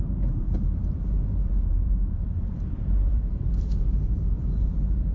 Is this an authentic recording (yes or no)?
no